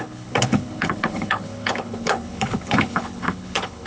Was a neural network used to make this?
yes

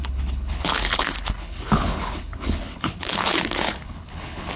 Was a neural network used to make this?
yes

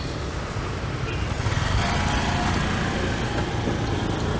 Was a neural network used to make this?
no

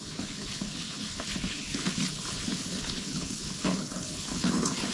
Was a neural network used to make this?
yes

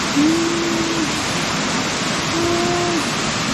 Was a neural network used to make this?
no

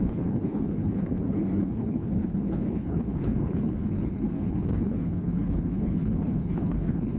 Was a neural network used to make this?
yes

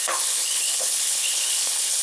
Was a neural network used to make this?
yes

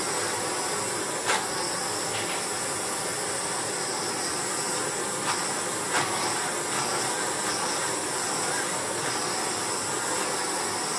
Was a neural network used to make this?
no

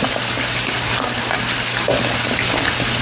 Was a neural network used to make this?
no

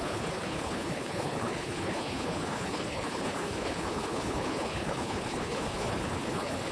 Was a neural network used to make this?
yes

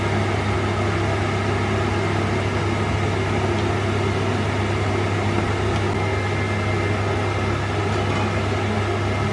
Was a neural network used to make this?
no